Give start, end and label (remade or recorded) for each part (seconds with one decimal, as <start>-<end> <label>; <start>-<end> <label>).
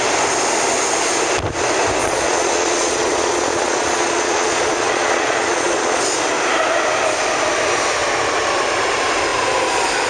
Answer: 0.0-2.0 recorded; 2.0-6.0 remade; 6.0-10.1 recorded